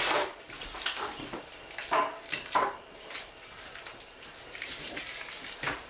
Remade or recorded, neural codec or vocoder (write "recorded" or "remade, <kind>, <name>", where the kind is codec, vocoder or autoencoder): remade, vocoder, BigVGAN v2